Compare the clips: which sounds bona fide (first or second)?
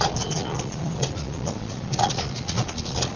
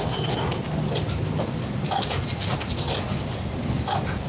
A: second